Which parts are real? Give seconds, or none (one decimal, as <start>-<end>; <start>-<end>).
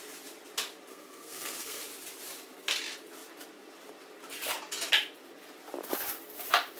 0.0-0.9; 1.8-6.8